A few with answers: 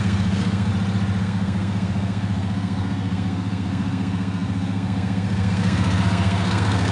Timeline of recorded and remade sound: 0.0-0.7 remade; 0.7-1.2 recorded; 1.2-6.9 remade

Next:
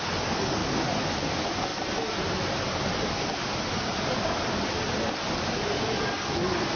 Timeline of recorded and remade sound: 0.0-6.8 recorded

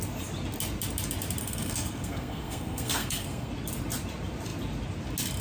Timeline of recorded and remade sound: 0.0-1.4 recorded; 1.4-3.5 remade; 3.5-5.4 recorded

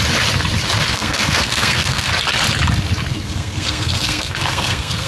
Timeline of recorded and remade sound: 0.0-0.9 recorded; 0.9-2.1 remade; 2.1-3.1 recorded; 3.1-5.1 remade

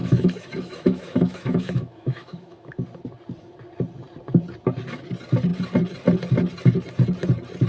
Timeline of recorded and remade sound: 0.0-2.7 remade; 2.7-7.7 recorded